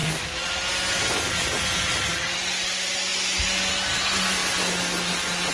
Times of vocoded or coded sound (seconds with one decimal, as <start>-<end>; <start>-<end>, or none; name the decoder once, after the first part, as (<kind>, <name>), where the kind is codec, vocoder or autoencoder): none

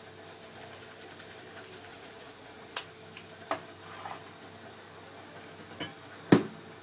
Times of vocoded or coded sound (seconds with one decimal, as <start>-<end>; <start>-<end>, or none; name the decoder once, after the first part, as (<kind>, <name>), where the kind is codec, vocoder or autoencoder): 1.9-2.8 (vocoder, Vocos)